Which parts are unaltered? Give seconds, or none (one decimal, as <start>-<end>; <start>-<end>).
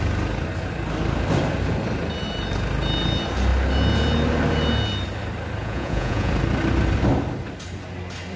0.0-5.6; 6.3-8.4